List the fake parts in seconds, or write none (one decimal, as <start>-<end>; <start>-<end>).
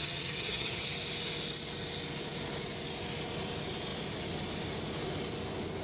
0.0-0.8